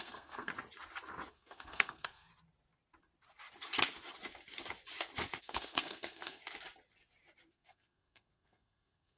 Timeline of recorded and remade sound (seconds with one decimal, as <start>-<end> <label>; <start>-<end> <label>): 0.0-0.5 remade; 0.5-1.3 recorded; 1.3-2.3 remade; 2.3-5.4 recorded; 5.4-6.4 remade; 6.4-7.5 recorded; 7.5-9.2 remade